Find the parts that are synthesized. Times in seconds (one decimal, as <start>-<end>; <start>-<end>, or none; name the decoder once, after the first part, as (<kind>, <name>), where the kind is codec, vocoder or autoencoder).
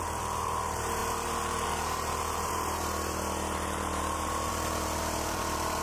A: 0.0-5.8 (vocoder, BigVGAN v2)